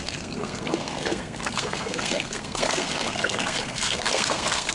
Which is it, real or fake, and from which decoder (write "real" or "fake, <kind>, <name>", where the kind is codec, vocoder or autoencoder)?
fake, codec, SNAC